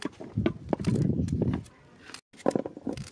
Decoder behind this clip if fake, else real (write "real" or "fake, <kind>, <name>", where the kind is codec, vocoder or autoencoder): real